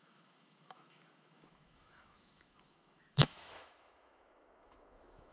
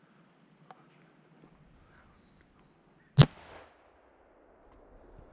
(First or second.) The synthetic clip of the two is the first